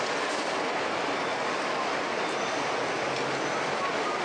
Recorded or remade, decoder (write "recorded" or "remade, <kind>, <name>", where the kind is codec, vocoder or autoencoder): recorded